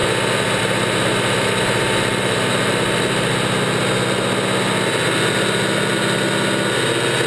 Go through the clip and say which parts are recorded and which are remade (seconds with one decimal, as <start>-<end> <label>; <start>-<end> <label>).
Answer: 0.0-0.6 recorded; 0.6-3.3 remade; 3.3-7.3 recorded